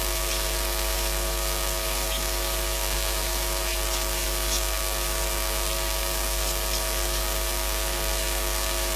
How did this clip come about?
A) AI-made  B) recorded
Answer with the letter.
A